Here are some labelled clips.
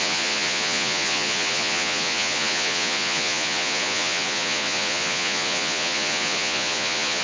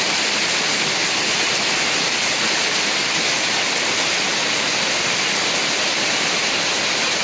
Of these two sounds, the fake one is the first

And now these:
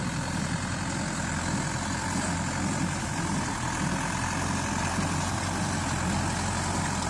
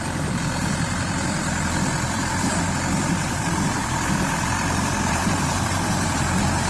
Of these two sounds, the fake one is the second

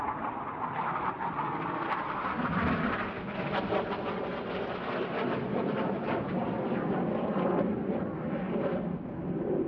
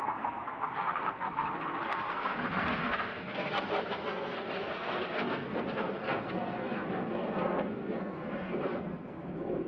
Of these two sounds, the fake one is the second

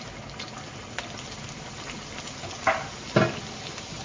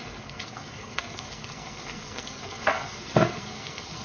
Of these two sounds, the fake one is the second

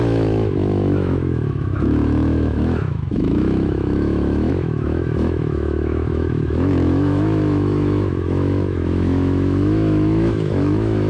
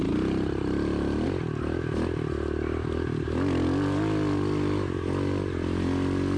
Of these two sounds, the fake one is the first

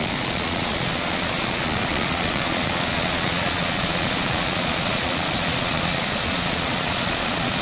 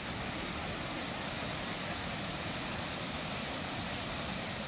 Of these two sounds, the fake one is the first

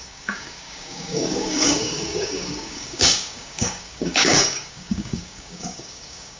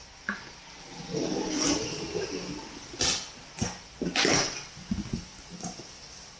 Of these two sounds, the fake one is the first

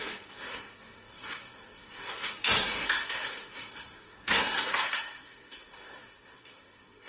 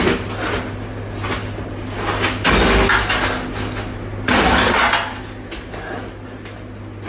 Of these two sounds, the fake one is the first